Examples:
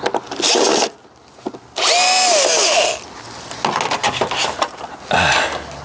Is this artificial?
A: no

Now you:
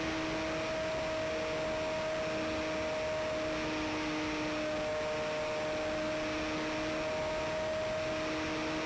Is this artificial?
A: no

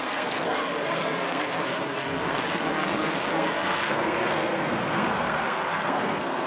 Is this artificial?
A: yes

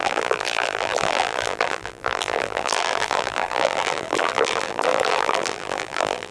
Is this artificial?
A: yes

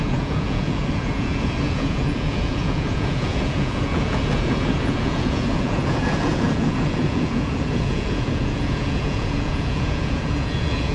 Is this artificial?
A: yes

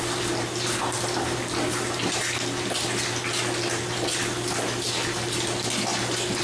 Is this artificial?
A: no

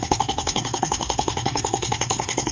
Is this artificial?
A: yes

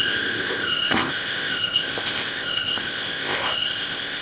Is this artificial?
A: yes